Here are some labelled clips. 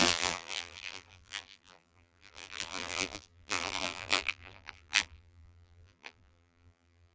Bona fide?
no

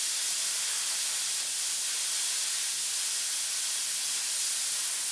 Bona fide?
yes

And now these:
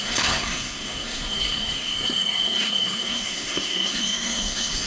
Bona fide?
no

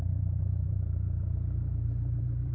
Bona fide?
no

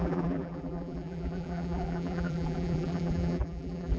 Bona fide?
no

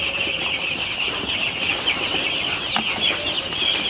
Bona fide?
yes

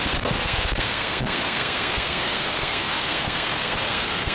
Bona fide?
no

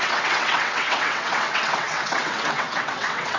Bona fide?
no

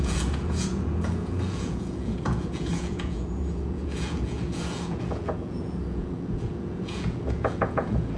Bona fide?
no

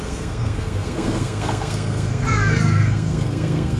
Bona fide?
no